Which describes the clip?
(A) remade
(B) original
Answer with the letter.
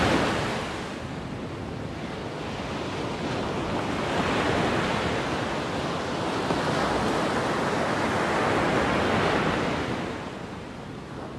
B